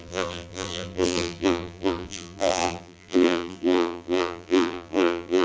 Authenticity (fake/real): fake